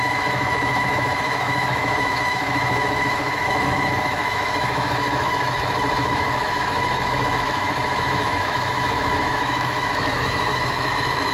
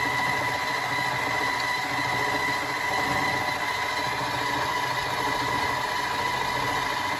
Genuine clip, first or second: second